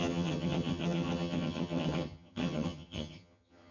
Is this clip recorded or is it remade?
remade